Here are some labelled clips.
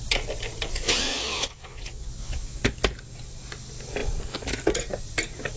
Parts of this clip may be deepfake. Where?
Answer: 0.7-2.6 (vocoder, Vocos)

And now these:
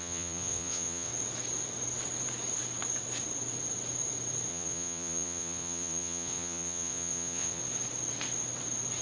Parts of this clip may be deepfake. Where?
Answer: 0.0-1.1 (vocoder, Vocos); 4.5-7.6

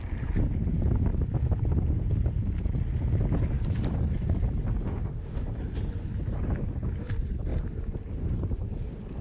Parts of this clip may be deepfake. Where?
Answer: 4.9-5.4 (autoencoder, DAC-VAE)